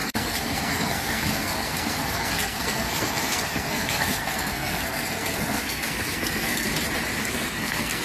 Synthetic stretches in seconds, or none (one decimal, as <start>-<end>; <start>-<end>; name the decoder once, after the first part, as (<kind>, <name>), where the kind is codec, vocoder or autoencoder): 0.0-6.7 (codec, SNAC); 7.2-8.0